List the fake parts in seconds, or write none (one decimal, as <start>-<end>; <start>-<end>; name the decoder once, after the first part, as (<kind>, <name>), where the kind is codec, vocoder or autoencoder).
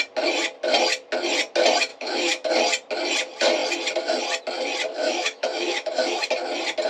1.9-2.5 (autoencoder, DAC-VAE); 5.0-6.3